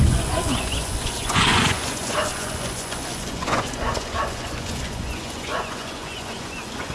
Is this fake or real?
fake